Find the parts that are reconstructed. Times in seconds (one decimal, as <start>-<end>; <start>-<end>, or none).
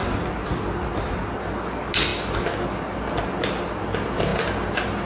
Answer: none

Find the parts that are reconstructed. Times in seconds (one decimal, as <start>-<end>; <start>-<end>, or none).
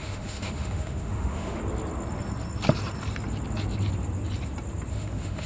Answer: 0.0-1.6; 4.9-5.5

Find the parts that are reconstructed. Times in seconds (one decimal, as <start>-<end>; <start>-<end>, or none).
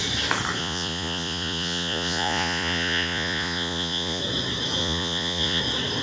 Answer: 0.6-4.2; 4.8-5.6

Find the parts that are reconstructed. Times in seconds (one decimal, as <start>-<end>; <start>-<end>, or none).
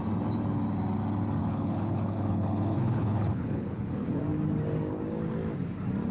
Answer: 1.4-4.2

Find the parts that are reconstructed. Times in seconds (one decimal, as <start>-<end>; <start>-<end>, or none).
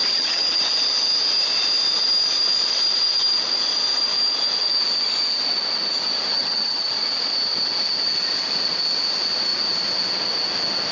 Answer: 0.0-0.6; 6.3-6.9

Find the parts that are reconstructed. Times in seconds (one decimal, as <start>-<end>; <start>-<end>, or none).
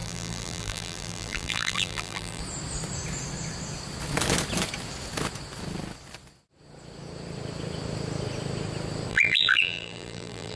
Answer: 0.0-2.4; 9.1-10.6